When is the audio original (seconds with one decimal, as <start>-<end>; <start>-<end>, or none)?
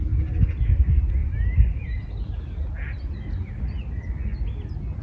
0.0-5.0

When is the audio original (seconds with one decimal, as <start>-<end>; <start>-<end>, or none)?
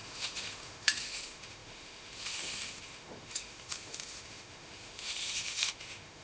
none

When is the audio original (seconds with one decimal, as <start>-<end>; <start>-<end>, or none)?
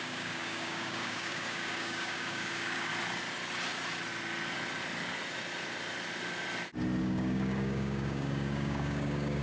2.9-7.0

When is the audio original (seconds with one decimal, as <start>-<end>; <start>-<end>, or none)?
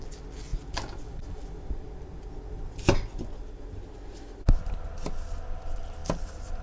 0.0-6.6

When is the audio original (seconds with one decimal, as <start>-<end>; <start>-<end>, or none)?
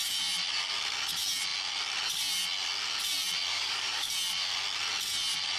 0.0-3.5; 4.1-5.6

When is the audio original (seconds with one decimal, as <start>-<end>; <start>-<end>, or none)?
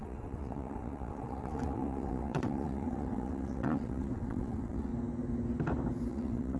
4.9-6.1